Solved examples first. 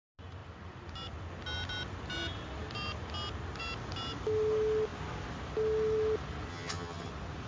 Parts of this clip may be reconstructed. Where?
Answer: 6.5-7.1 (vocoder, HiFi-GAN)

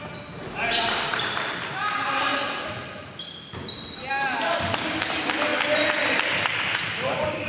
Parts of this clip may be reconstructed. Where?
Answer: 0.0-2.3 (vocoder, BigVGAN v2); 4.1-5.5; 6.4-7.5

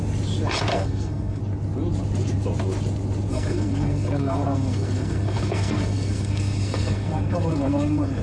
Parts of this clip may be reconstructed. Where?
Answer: 0.7-1.4 (codec, SNAC); 3.3-8.2

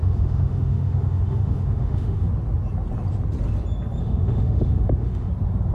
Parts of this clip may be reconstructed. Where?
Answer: 0.0-2.3 (autoencoder, DAC-VAE); 4.0-5.3

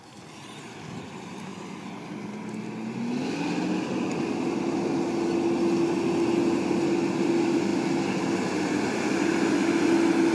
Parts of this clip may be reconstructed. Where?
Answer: none